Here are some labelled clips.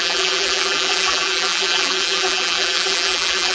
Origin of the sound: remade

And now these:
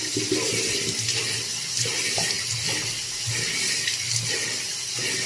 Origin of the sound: recorded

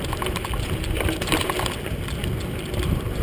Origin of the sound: recorded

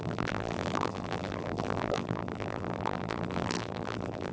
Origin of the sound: remade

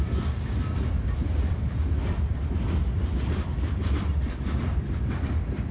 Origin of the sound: remade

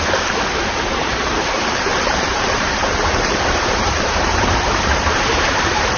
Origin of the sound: remade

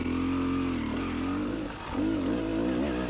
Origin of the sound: recorded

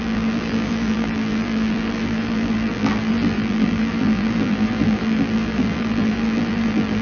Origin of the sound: remade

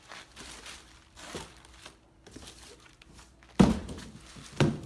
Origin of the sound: recorded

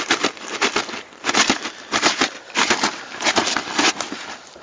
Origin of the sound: remade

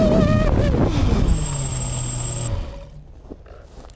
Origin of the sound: recorded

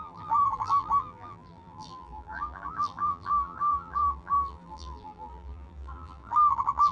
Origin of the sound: remade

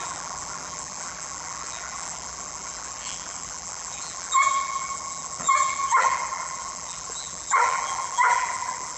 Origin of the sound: remade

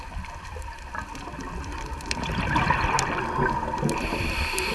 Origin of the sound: remade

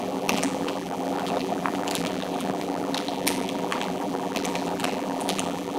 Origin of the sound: remade